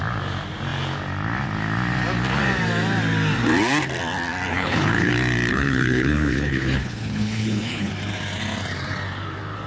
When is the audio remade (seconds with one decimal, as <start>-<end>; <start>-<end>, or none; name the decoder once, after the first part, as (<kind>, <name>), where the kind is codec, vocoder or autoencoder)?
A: 4.5-5.1 (codec, HILCodec); 5.5-7.9